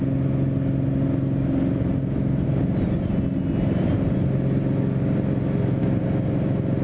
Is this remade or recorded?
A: recorded